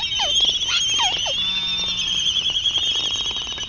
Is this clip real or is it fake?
real